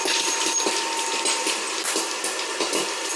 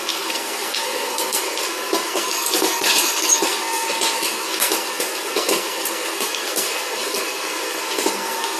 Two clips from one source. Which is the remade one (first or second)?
second